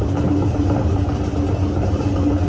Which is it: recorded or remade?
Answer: recorded